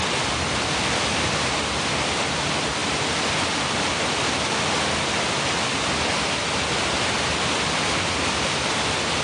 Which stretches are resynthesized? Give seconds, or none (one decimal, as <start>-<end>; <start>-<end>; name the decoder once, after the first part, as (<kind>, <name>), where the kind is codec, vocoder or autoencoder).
2.8-3.6 (vocoder, BigVGAN v2)